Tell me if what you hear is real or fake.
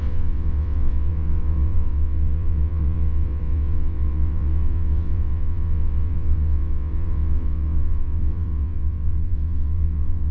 fake